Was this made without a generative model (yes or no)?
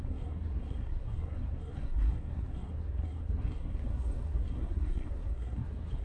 no